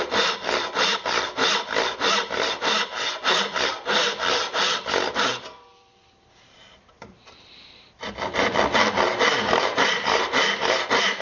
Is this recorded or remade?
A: remade